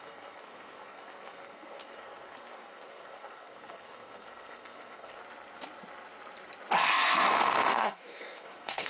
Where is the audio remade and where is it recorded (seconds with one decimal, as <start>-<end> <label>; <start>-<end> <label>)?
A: 0.0-5.2 remade; 5.2-6.9 recorded; 6.9-8.9 remade